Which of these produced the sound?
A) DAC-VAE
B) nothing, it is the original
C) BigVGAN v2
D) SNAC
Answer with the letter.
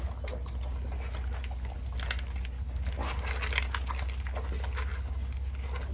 B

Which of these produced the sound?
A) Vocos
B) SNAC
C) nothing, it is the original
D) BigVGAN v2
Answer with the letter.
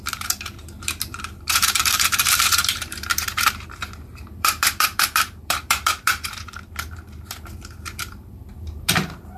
D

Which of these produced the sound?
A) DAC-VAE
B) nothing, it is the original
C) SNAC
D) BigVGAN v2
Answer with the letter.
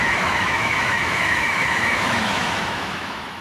A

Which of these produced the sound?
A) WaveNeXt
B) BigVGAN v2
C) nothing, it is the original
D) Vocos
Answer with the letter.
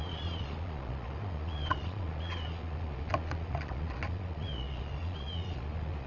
D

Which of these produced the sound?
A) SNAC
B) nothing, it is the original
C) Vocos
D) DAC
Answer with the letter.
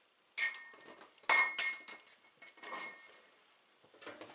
B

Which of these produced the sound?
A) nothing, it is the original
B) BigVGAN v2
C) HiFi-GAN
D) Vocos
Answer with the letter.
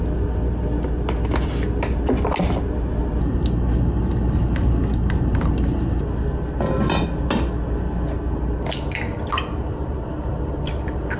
A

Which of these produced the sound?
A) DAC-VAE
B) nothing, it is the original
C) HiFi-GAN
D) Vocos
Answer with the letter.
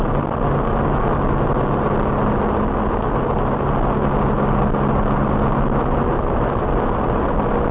B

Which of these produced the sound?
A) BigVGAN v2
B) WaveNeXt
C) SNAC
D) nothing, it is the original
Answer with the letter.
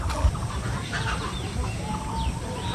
D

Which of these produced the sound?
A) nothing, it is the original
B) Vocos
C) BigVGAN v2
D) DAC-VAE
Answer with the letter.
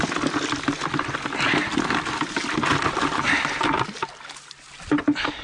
A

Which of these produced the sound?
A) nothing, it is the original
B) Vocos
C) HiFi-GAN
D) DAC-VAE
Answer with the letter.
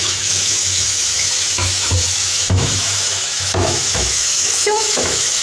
D